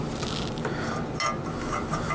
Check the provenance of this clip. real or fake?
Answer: real